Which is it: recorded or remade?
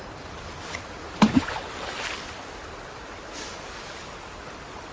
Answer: recorded